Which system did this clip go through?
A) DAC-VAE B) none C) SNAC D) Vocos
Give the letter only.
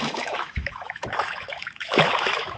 A